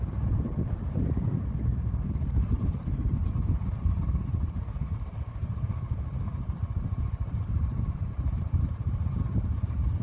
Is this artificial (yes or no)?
yes